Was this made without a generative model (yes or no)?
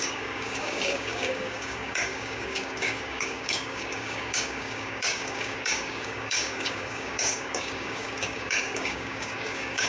no